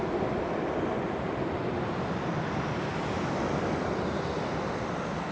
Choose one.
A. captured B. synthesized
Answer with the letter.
A